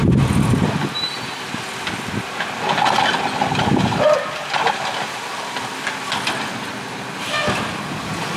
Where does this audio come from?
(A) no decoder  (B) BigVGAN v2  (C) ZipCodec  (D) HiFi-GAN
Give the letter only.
A